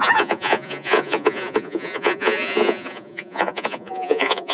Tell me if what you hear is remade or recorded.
remade